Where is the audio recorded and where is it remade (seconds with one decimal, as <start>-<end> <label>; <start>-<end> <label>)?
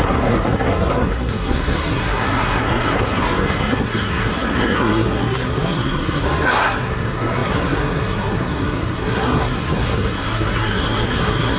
0.0-11.6 remade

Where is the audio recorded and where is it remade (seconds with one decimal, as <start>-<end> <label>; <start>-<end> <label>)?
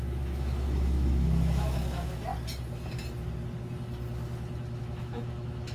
0.0-2.3 remade; 2.3-4.8 recorded; 4.8-5.7 remade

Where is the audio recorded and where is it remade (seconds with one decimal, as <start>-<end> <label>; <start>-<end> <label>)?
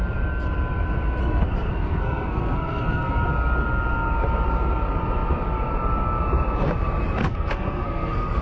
0.0-1.2 recorded; 1.2-3.1 remade; 3.1-7.2 recorded; 7.2-8.4 remade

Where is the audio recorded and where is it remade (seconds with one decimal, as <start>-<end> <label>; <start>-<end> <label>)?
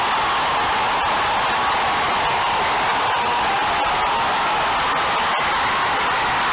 0.0-6.5 recorded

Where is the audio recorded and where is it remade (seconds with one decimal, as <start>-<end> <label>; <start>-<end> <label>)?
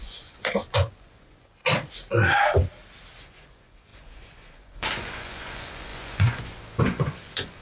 0.0-1.6 remade; 1.6-3.2 recorded; 3.2-7.6 remade